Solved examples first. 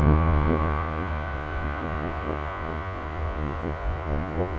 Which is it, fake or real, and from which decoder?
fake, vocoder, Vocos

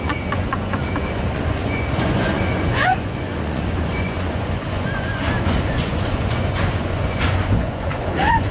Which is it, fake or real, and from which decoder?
fake, vocoder, Vocos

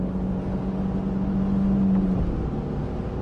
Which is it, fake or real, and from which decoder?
real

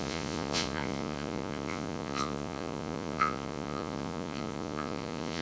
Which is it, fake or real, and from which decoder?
fake, vocoder, Vocos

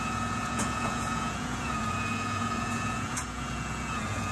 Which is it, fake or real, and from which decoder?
fake, vocoder, Vocos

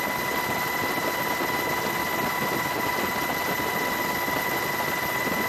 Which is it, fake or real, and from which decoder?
real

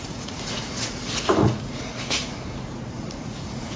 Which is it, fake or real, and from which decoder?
fake, vocoder, Vocos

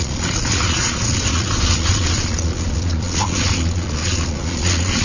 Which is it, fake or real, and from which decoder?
fake, vocoder, Vocos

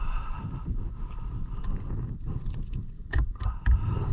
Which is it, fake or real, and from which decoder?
real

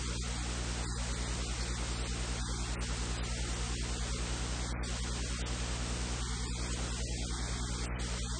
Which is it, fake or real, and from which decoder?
real